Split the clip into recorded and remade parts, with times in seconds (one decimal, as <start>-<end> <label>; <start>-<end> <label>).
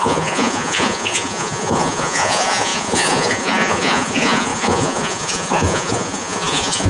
0.0-6.9 remade